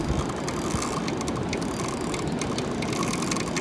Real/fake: real